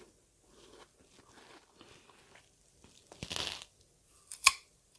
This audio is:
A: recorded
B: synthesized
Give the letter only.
A